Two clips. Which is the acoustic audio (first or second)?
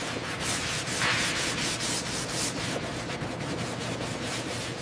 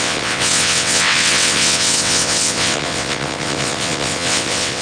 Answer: first